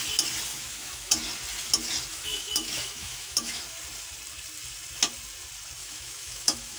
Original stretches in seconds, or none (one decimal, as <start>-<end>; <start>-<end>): 0.0-0.5; 1.1-2.1; 3.6-5.8